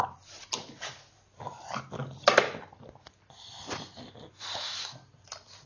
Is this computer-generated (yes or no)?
no